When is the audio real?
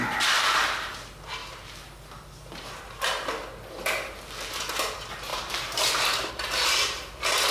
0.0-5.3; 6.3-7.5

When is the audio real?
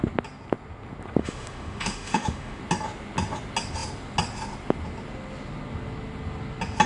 0.0-1.2; 2.6-6.9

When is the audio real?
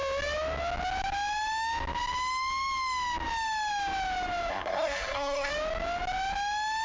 0.0-4.5; 5.5-6.8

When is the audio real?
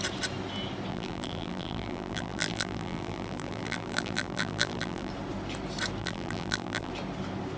0.0-0.9; 5.1-6.0; 6.9-7.6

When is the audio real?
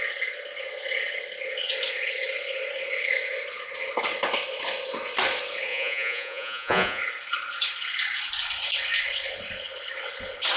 0.0-5.7; 7.0-10.6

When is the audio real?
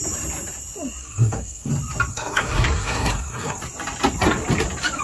0.0-1.0; 1.7-2.1; 3.6-5.0